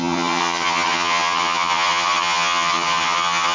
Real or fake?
fake